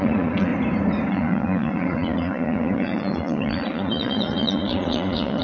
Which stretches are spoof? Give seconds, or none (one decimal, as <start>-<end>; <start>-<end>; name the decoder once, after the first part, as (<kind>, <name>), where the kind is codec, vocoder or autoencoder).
0.0-0.5 (vocoder, Vocos); 1.1-5.4